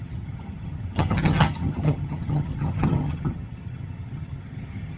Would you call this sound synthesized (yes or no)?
yes